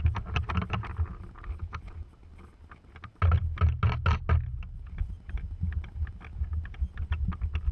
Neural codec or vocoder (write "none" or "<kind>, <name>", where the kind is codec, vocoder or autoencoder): none